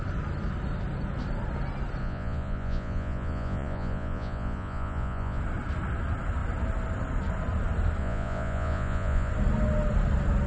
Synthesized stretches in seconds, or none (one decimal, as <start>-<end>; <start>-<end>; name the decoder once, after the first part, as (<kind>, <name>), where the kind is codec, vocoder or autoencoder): 2.0-5.4 (vocoder, Vocos); 8.0-9.3